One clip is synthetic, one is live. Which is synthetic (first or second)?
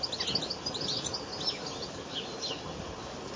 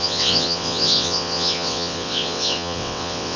second